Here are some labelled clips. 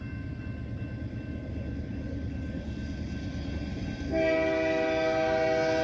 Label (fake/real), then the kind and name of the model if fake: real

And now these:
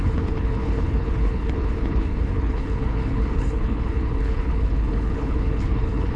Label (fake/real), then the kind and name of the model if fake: fake, codec, HILCodec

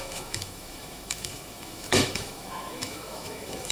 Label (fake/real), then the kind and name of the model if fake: fake, autoencoder, DAC-VAE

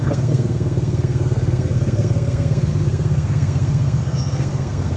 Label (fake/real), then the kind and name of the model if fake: fake, codec, SNAC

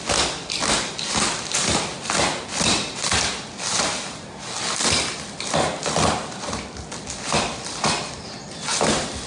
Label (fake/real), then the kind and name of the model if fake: real